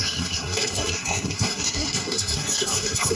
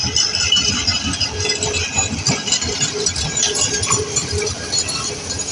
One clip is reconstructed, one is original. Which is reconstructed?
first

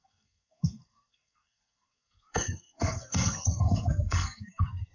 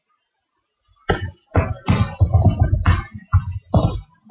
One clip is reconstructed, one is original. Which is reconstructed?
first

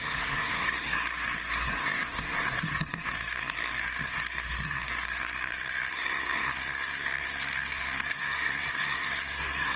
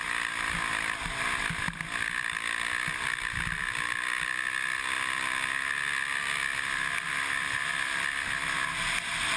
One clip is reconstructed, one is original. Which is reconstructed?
first